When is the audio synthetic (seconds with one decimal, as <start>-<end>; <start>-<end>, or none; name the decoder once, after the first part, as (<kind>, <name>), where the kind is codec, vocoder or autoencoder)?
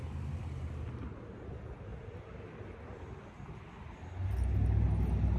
none